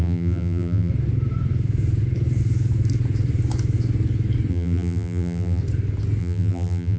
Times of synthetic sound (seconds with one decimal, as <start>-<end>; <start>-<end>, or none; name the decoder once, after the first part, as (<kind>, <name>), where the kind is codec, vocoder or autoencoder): 0.0-0.9 (vocoder, BigVGAN v2); 4.5-5.6; 6.2-7.0

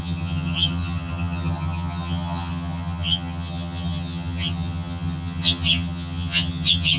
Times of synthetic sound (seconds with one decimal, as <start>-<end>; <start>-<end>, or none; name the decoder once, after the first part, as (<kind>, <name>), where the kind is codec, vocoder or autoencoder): 0.0-7.0 (vocoder, HiFi-GAN)

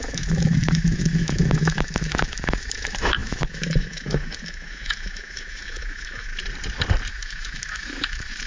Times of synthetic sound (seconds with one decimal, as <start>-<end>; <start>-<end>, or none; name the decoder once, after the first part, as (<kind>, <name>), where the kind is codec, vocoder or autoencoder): 0.0-6.3 (autoencoder, DAC-VAE); 7.1-8.5

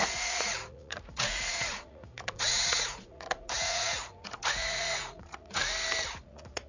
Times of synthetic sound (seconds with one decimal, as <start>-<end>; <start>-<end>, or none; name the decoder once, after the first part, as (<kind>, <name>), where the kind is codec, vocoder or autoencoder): 0.0-5.6 (vocoder, Vocos); 6.2-6.7

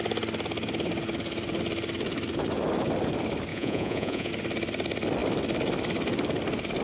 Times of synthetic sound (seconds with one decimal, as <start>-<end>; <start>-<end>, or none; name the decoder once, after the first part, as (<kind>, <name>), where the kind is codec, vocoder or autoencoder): 3.5-4.3 (vocoder, Vocos)